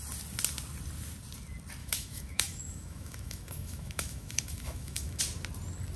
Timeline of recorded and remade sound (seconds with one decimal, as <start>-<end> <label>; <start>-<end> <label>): 0.0-1.8 recorded; 1.8-5.2 remade; 5.2-6.0 recorded